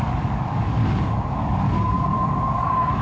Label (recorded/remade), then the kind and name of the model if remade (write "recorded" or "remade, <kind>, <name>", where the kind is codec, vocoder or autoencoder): remade, codec, DAC